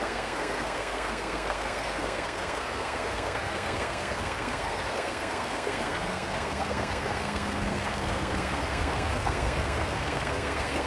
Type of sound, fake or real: fake